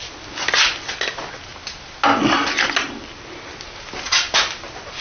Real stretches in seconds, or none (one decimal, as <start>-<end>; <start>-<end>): 0.0-5.0